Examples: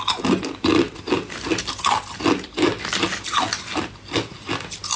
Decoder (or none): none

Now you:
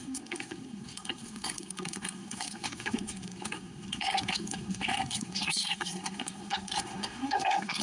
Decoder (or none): codec, SNAC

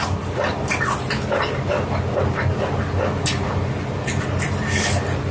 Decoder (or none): none